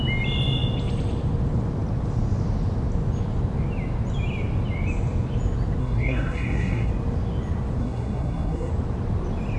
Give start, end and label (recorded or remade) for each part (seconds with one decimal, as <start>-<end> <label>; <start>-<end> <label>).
0.0-5.8 recorded; 5.8-6.9 remade; 6.9-7.8 recorded; 7.8-8.7 remade; 8.7-9.6 recorded